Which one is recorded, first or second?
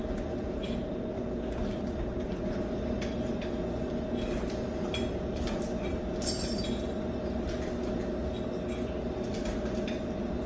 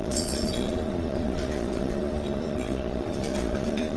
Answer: first